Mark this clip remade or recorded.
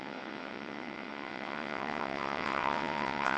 remade